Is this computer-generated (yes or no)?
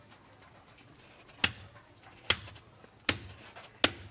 no